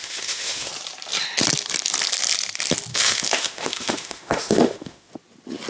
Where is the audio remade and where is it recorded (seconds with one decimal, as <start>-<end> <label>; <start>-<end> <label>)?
0.0-0.7 remade; 0.7-2.9 recorded; 2.9-5.1 remade; 5.1-5.7 recorded